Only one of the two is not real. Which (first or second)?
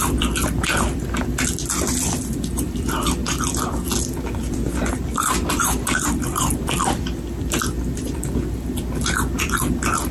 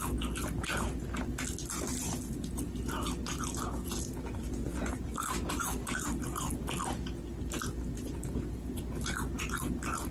first